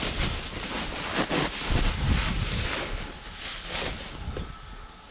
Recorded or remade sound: recorded